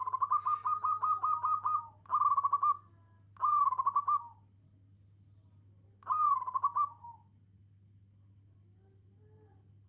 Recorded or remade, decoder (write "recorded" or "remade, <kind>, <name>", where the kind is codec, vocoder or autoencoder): recorded